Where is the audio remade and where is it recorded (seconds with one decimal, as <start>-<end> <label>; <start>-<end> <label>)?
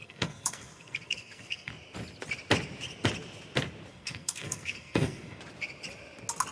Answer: 0.0-1.7 remade; 1.7-3.9 recorded; 3.9-5.4 remade; 5.4-6.5 recorded